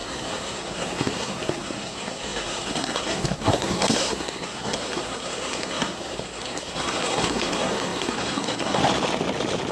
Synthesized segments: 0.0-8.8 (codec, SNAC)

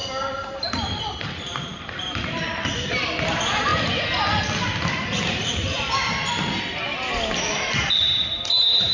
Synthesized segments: 1.0-3.7 (vocoder, BigVGAN v2); 4.6-6.0; 8.5-8.9

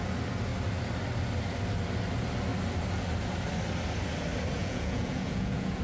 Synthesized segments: 4.6-5.8 (vocoder, Vocos)

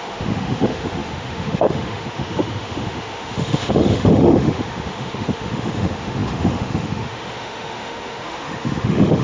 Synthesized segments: 0.0-9.2 (autoencoder, DAC-VAE)

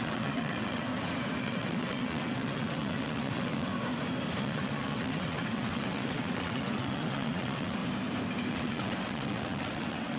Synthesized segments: 0.0-0.9 (vocoder, WaveNeXt); 1.4-3.7; 4.4-7.8; 8.5-10.2